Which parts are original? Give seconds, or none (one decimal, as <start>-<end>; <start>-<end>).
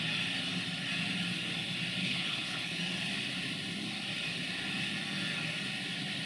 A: 0.0-2.0; 2.8-6.3